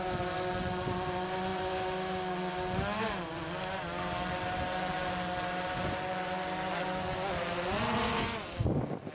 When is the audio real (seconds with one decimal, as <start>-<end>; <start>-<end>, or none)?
0.0-9.1